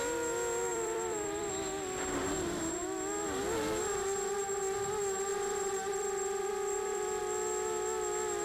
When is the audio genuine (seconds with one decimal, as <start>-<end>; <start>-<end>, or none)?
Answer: 0.0-0.7; 1.5-5.3; 7.2-8.4